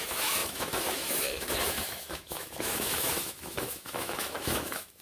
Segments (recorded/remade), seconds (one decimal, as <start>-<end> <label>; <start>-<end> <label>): 0.0-5.0 remade